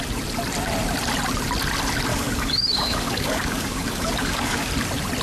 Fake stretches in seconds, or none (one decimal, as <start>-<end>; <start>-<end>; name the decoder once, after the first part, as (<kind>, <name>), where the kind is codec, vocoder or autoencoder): 2.1-4.7 (codec, DAC)